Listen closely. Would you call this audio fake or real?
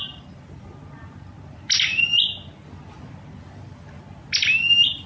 real